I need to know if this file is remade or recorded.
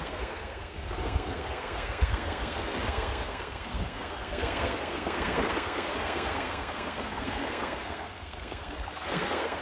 remade